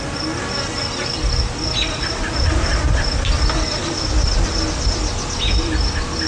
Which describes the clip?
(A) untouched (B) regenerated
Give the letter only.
A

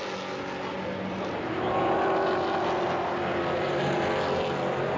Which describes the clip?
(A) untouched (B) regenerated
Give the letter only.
A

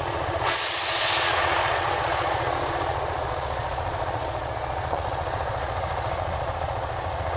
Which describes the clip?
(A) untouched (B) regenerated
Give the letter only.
B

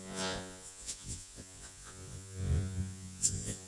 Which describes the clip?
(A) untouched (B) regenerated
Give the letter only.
B